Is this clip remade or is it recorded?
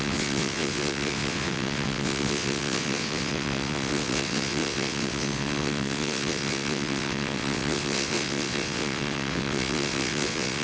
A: remade